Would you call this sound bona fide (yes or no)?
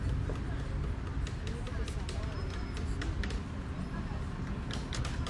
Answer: yes